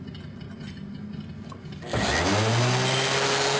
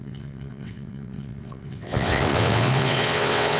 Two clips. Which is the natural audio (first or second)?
first